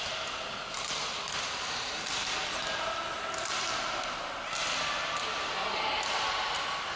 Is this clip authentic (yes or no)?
yes